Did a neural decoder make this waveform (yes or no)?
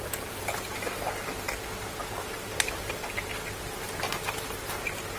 yes